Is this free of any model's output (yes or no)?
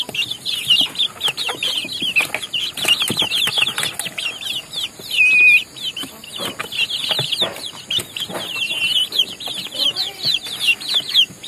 yes